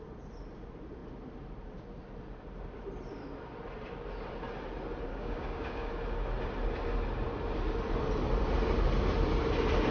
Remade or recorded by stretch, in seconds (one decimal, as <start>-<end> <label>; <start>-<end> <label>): 0.0-5.1 recorded; 5.1-5.9 remade; 5.9-9.9 recorded